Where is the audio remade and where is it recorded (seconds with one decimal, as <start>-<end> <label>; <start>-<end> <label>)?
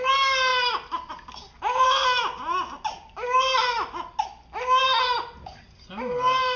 0.0-6.6 recorded